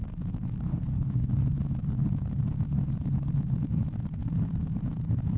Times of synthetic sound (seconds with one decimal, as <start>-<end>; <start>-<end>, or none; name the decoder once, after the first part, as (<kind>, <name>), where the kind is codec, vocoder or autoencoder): 0.7-1.3 (codec, HILCodec)